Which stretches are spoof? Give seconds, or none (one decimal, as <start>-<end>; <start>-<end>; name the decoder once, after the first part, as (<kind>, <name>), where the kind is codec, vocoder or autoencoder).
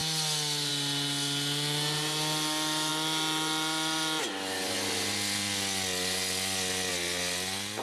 none